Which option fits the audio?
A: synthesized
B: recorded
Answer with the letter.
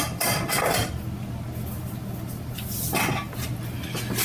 B